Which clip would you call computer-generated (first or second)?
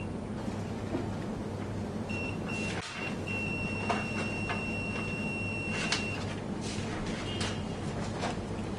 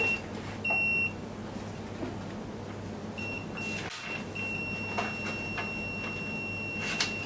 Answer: first